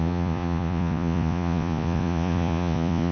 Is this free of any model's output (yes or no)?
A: no